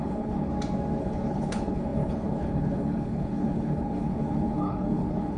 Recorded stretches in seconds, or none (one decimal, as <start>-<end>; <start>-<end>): 0.5-1.0